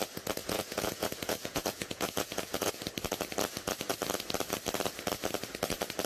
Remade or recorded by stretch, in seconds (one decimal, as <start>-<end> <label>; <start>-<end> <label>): 0.0-0.4 recorded; 0.4-2.7 remade; 2.7-6.1 recorded